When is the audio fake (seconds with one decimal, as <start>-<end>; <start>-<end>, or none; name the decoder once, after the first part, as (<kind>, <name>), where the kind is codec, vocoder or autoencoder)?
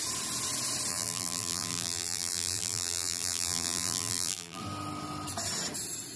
0.9-4.6 (vocoder, BigVGAN v2)